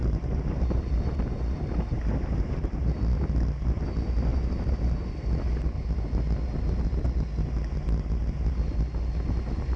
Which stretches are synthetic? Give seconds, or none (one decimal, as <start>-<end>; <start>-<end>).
0.0-2.9; 4.3-4.9